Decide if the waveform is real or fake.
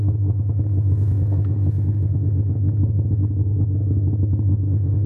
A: fake